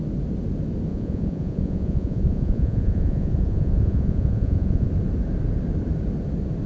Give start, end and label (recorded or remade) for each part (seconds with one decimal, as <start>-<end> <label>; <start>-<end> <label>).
0.0-0.9 recorded; 0.9-4.9 remade; 4.9-6.7 recorded